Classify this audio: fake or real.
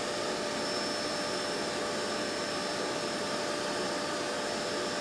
real